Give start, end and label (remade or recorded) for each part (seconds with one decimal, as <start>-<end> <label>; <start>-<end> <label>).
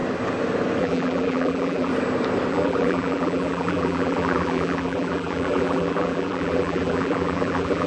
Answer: 0.0-0.8 recorded; 0.8-1.9 remade; 1.9-2.5 recorded; 2.5-7.9 remade